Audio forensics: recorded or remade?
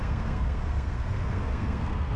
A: remade